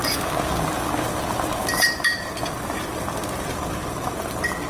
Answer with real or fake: real